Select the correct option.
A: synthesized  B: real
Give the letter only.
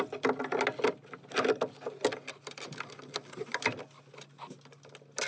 B